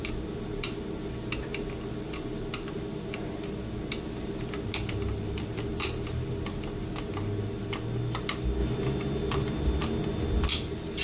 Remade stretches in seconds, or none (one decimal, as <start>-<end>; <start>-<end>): none